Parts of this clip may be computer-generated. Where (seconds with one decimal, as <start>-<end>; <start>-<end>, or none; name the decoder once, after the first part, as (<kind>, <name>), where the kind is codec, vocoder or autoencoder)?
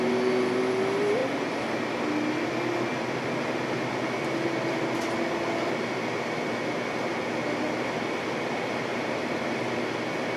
8.9-9.6 (vocoder, BigVGAN v2)